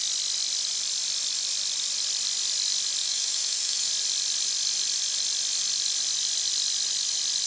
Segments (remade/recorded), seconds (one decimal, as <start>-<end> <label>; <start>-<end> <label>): 0.0-3.0 recorded; 3.0-3.9 remade; 3.9-7.5 recorded